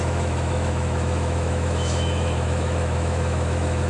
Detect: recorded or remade remade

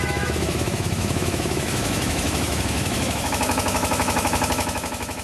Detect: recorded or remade remade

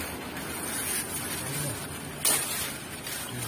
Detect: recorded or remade recorded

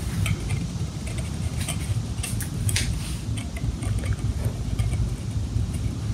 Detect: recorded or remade recorded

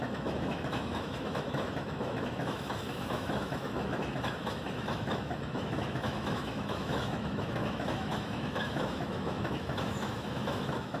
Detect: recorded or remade remade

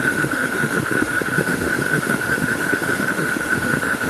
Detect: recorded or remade remade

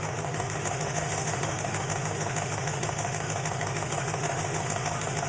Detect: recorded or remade remade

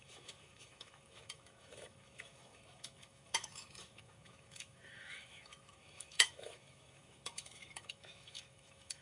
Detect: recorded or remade remade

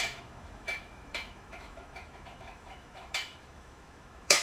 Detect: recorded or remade remade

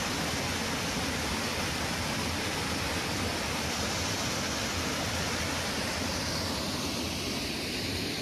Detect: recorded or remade recorded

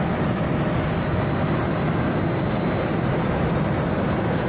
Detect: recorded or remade recorded